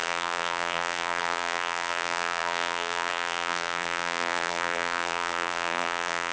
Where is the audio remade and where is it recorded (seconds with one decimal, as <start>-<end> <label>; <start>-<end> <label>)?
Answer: 0.0-6.3 remade